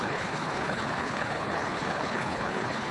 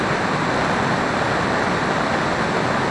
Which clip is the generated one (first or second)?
first